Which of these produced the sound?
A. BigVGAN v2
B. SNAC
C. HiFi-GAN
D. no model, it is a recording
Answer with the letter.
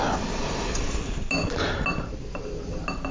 D